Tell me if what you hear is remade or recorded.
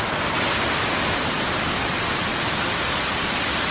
recorded